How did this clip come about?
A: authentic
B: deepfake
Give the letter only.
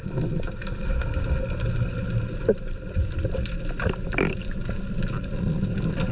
A